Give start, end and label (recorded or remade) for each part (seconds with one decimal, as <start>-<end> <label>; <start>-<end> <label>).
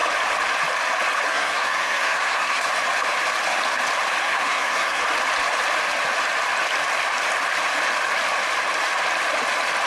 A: 0.0-1.3 recorded; 1.3-2.7 remade; 2.7-4.2 recorded; 4.2-5.0 remade; 5.0-9.9 recorded